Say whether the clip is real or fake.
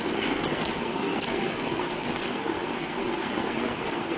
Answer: fake